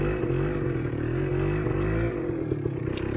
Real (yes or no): yes